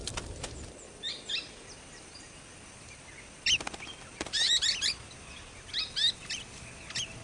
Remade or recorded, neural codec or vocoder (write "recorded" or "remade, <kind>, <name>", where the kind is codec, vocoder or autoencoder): recorded